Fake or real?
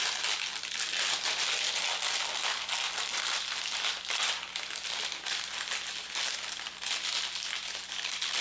real